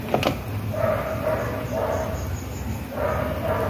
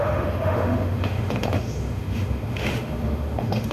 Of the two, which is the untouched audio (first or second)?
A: first